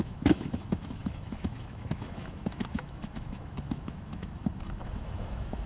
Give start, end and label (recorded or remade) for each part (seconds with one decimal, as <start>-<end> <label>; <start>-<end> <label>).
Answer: 0.0-5.7 remade